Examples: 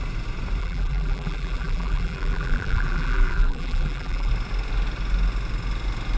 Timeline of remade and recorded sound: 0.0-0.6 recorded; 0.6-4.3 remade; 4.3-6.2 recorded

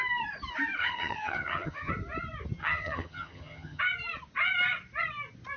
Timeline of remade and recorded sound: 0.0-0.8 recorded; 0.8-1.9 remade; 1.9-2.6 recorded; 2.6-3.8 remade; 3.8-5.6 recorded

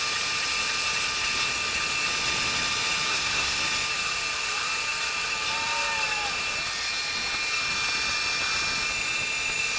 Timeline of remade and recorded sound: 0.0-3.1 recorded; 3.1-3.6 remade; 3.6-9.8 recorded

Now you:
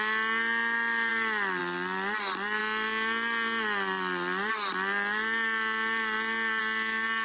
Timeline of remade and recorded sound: 0.0-7.2 recorded

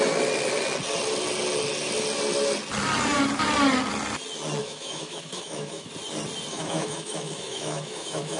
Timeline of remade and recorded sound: 0.0-4.6 recorded; 4.6-5.9 remade; 5.9-6.5 recorded; 6.5-8.4 remade

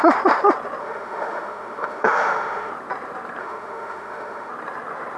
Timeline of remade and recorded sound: 0.0-0.8 recorded; 0.8-2.7 remade; 2.7-3.4 recorded; 3.4-4.5 remade; 4.5-5.2 recorded

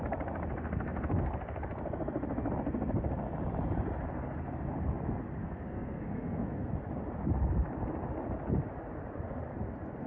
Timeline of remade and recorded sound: 0.0-5.4 recorded; 5.4-6.7 remade; 6.7-10.1 recorded